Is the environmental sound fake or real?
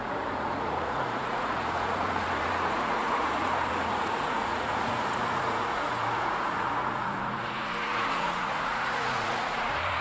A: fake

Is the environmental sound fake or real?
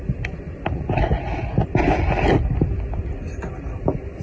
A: real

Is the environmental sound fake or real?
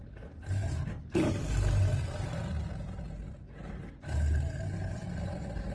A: real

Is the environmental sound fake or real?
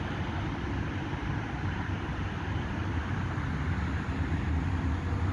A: real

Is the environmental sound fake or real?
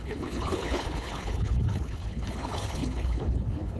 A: fake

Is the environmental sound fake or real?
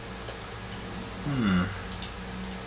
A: real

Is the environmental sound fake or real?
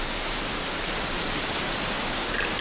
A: real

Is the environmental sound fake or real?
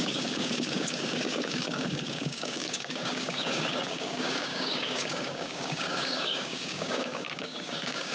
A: fake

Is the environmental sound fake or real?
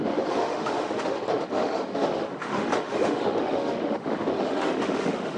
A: fake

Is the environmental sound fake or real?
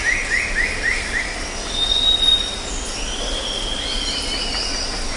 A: real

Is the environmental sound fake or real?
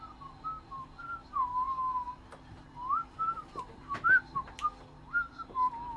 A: real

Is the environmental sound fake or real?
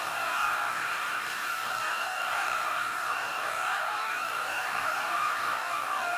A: fake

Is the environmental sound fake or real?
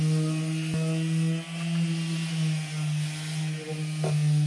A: real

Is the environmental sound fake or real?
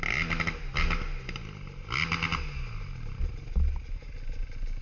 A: real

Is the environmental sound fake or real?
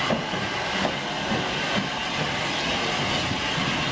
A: real